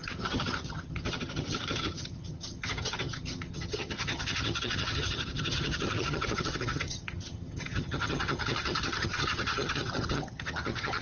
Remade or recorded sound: remade